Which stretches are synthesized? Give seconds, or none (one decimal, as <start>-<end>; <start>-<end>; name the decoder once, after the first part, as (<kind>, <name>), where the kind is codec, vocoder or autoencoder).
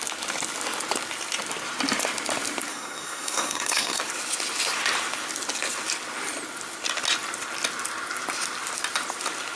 2.7-4.0 (codec, SNAC)